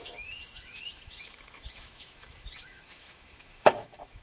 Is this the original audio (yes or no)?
no